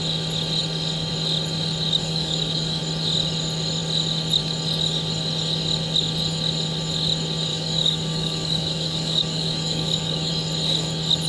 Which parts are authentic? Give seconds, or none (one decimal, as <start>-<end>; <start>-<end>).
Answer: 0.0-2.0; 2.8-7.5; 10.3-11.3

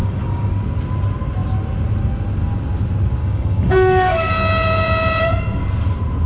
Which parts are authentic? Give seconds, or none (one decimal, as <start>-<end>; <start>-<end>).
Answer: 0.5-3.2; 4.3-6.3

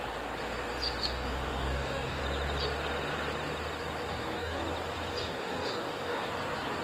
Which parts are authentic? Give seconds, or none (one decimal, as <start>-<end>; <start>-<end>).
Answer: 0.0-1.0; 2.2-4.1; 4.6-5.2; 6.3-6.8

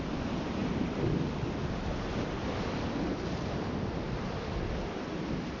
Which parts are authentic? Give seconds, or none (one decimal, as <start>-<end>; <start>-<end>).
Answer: 0.0-5.6

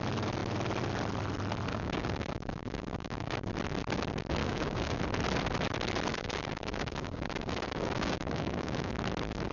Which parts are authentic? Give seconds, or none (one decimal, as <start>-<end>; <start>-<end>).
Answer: 0.0-1.7; 3.5-4.4; 5.0-6.1; 8.9-9.5

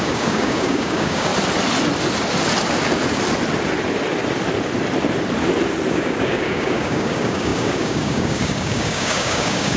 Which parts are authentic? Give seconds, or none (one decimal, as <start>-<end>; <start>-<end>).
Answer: 1.3-5.9

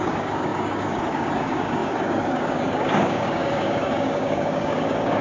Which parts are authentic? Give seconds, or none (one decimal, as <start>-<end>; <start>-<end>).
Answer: none

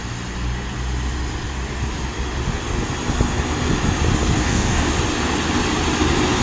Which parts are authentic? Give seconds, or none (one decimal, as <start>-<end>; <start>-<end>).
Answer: 0.0-4.4; 4.9-6.4